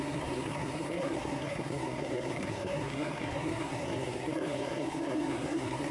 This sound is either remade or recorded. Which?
remade